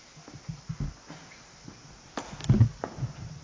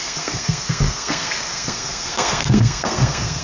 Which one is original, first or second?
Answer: first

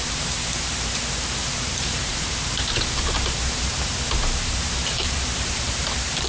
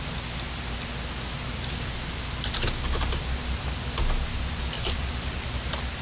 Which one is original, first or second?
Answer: second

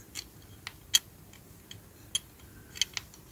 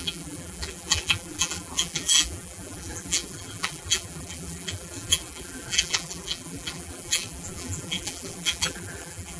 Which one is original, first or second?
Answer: first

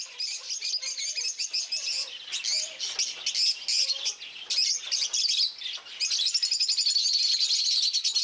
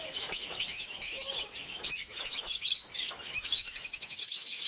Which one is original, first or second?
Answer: first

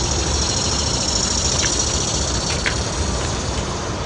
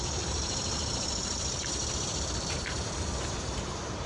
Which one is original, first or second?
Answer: first